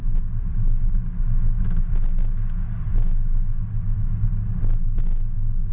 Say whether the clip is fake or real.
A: real